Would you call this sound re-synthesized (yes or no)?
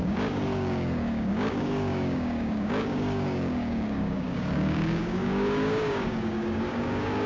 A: yes